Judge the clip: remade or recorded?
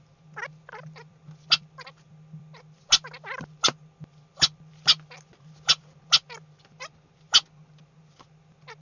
recorded